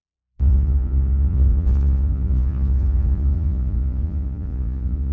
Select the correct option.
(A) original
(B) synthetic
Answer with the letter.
B